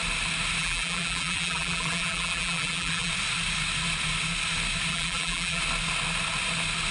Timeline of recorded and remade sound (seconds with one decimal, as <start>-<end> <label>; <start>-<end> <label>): 0.0-0.6 recorded; 0.6-3.1 remade; 3.1-4.9 recorded; 4.9-5.6 remade; 5.6-6.9 recorded